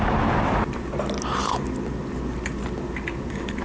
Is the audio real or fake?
real